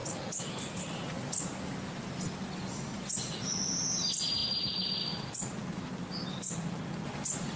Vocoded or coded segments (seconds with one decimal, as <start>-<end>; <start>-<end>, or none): none